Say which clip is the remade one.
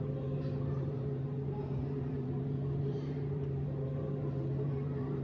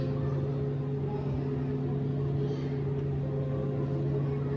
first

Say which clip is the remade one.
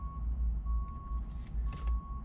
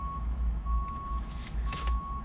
second